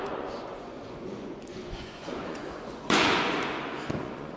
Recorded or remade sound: remade